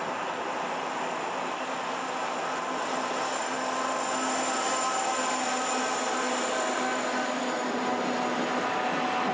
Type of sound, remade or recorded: recorded